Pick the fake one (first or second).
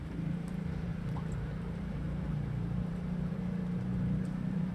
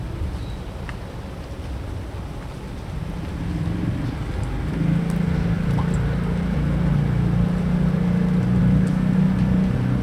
first